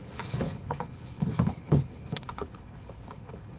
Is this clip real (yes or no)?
no